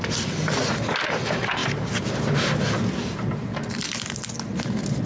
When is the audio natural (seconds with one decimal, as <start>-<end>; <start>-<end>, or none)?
0.0-5.1